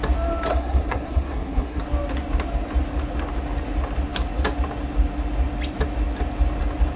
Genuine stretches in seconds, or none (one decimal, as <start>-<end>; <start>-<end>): 0.0-0.5; 1.8-7.0